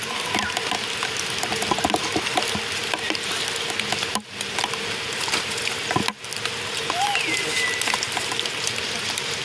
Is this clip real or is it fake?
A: real